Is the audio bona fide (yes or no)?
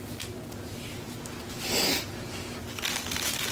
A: yes